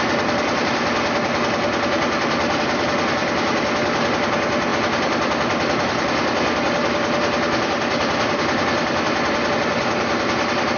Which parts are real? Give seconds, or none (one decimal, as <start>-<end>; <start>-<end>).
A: 0.0-10.8

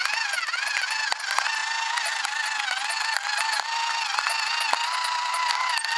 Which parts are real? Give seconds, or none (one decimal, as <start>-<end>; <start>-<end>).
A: 0.0-6.0

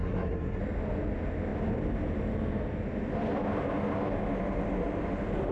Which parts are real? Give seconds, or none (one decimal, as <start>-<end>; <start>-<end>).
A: 0.6-5.5